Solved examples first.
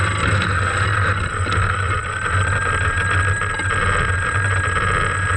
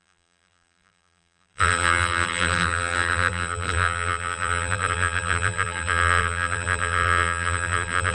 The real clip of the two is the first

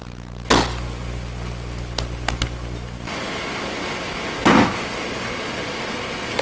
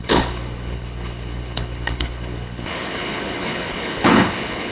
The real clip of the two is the first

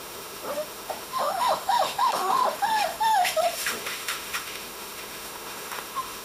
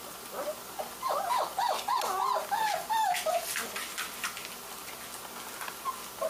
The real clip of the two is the second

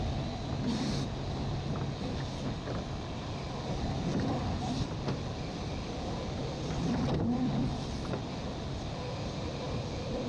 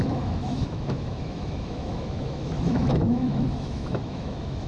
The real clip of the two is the first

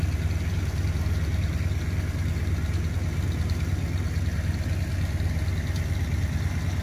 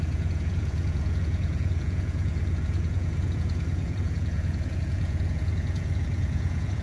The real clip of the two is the first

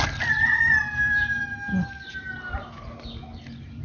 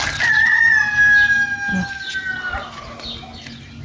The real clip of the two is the second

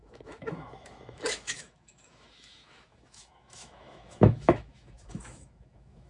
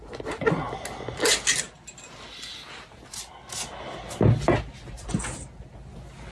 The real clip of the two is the second